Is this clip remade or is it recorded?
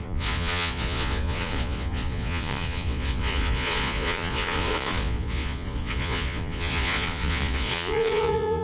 remade